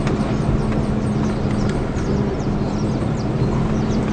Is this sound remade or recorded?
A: recorded